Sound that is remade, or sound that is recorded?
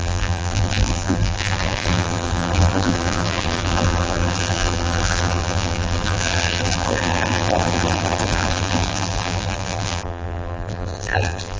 remade